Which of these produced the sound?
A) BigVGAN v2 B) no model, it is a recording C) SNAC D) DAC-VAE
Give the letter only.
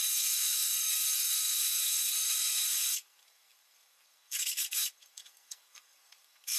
C